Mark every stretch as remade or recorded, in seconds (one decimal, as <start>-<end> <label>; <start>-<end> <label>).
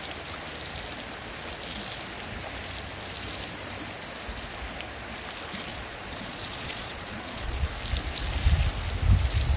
0.0-5.7 recorded; 5.7-7.7 remade; 7.7-9.6 recorded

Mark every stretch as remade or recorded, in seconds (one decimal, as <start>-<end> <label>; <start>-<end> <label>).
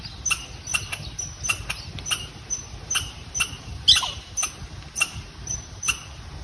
0.0-6.4 recorded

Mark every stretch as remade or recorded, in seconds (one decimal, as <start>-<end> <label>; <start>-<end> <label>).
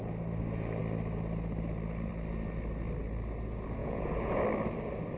0.0-3.8 recorded; 3.8-4.4 remade; 4.4-5.2 recorded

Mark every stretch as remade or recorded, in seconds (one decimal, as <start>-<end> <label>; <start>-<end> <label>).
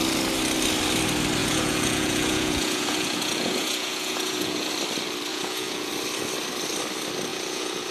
0.0-1.4 recorded; 1.4-4.7 remade; 4.7-5.3 recorded; 5.3-5.9 remade; 5.9-7.3 recorded; 7.3-7.9 remade